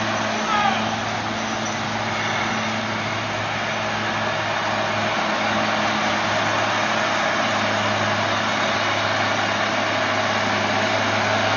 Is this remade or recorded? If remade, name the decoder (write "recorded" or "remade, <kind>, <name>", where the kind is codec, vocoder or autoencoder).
recorded